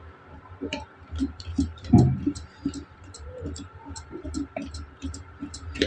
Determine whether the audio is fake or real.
fake